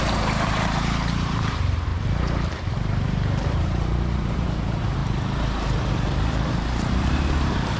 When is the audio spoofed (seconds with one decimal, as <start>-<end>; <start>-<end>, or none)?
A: 0.0-1.9; 2.6-5.0; 6.1-7.8